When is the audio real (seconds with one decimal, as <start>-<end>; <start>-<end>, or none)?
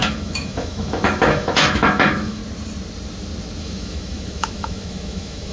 2.4-3.6